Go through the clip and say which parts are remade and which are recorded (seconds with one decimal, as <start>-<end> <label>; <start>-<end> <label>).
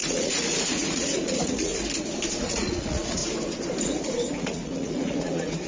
0.0-1.7 remade; 1.7-2.4 recorded; 2.4-3.2 remade; 3.2-3.8 recorded; 3.8-5.7 remade